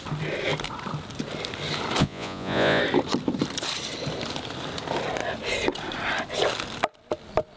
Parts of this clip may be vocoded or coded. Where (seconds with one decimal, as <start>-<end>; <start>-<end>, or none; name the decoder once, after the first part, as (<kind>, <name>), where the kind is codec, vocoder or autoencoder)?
2.0-2.8 (vocoder, Vocos)